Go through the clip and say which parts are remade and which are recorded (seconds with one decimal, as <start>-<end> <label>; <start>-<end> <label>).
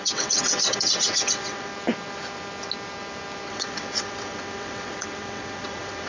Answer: 0.0-1.7 remade; 1.7-3.5 recorded; 3.5-6.1 remade